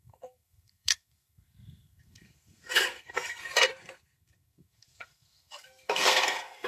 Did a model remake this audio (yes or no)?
yes